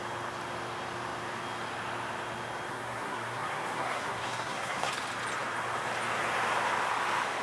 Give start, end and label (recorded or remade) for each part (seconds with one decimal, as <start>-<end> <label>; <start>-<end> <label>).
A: 0.0-2.7 recorded; 2.7-4.9 remade; 4.9-7.4 recorded